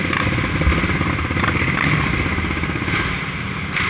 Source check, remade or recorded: recorded